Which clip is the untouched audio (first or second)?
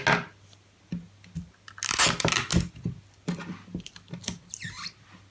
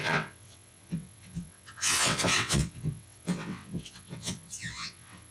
first